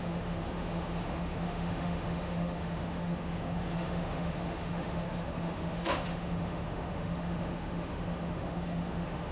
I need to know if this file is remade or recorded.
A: remade